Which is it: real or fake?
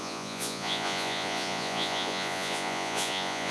fake